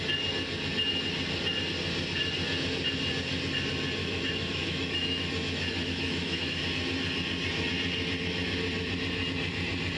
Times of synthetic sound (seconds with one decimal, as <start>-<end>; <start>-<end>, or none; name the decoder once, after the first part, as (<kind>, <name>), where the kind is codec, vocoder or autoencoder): 4.0-6.6 (autoencoder, DAC-VAE)